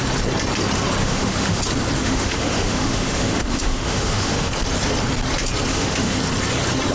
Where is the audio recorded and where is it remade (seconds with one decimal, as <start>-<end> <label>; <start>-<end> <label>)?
0.0-1.0 recorded; 1.0-1.6 remade; 1.6-2.0 recorded; 2.0-4.5 remade; 4.5-5.7 recorded; 5.7-6.2 remade; 6.2-6.9 recorded